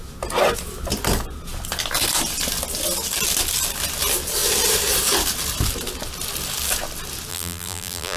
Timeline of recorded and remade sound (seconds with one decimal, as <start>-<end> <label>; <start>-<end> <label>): 0.0-7.3 recorded; 7.3-8.2 remade